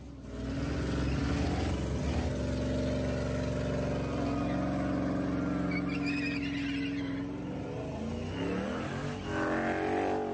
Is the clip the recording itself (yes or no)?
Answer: yes